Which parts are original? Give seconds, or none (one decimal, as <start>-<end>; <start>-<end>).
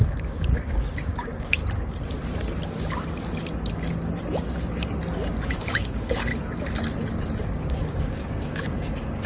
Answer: 1.6-5.4; 6.3-7.4